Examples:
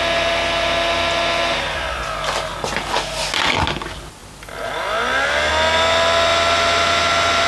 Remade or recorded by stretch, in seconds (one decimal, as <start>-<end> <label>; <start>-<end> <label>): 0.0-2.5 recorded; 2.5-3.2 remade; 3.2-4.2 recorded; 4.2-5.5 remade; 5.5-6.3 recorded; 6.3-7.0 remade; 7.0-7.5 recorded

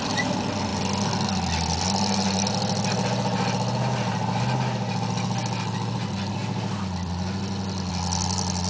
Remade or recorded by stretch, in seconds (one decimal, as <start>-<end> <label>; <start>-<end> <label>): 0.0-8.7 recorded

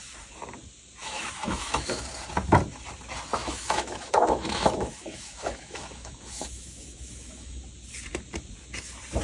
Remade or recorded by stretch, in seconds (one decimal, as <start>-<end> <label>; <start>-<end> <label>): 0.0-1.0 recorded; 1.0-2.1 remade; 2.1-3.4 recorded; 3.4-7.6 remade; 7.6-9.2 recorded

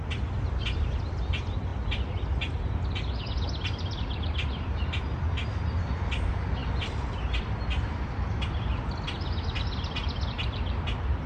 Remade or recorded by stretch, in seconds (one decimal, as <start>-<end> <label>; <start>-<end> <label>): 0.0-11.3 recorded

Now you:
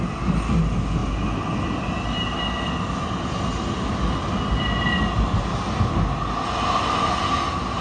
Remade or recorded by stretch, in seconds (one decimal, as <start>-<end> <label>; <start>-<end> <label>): 0.0-7.8 recorded

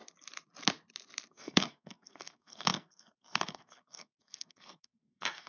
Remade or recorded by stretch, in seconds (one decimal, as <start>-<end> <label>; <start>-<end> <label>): 0.0-1.3 recorded; 1.3-5.5 remade

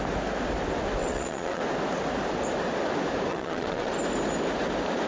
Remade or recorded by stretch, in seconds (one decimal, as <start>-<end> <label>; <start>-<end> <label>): 0.0-1.0 recorded; 1.0-1.6 remade; 1.6-3.3 recorded; 3.3-3.9 remade; 3.9-5.1 recorded

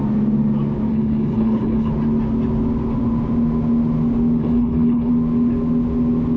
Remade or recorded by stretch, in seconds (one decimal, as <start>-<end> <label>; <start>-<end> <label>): 0.0-0.9 recorded; 0.9-1.9 remade; 1.9-4.4 recorded; 4.4-5.1 remade; 5.1-6.4 recorded